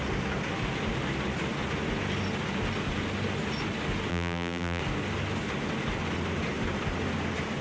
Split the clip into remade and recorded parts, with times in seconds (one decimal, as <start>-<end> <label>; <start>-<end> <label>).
0.0-4.1 recorded; 4.1-4.8 remade; 4.8-7.6 recorded